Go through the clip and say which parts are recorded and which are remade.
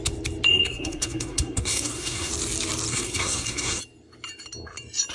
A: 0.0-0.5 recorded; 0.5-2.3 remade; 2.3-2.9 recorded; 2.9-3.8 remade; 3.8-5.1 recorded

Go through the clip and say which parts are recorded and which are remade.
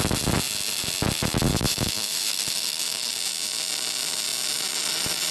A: 0.0-1.5 recorded; 1.5-3.1 remade; 3.1-5.3 recorded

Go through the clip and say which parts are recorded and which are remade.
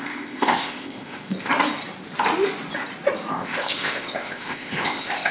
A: 0.0-1.5 remade; 1.5-3.3 recorded; 3.3-5.3 remade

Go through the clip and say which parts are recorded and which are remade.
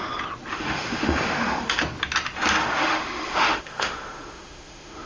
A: 0.0-0.5 recorded; 0.5-1.8 remade; 1.8-2.6 recorded; 2.6-5.1 remade